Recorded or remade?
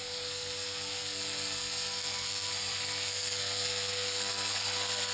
remade